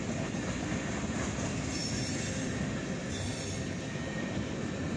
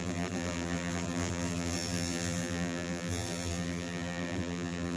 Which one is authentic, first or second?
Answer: first